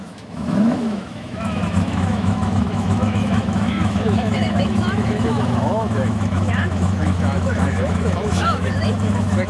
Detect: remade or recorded remade